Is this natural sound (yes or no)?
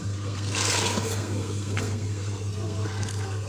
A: no